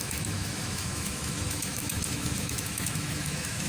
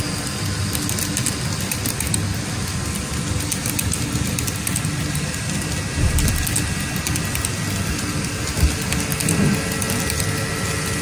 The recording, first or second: second